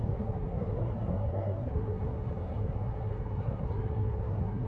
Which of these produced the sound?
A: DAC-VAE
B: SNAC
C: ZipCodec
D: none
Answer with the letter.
B